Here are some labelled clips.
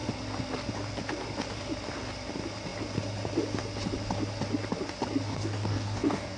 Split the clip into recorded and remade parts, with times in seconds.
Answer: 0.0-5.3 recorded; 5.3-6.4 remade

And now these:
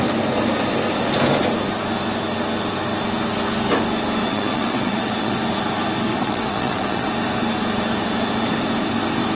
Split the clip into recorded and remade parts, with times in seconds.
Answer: 0.0-4.2 recorded; 4.2-5.4 remade; 5.4-6.1 recorded; 6.1-7.1 remade; 7.1-9.3 recorded

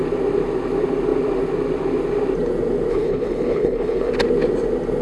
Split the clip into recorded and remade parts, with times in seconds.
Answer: 0.0-2.9 recorded; 2.9-4.1 remade; 4.1-5.0 recorded

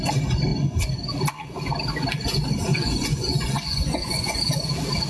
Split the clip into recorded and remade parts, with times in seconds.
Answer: 0.0-0.5 recorded; 0.5-1.1 remade; 1.1-2.7 recorded; 2.7-4.4 remade; 4.4-5.1 recorded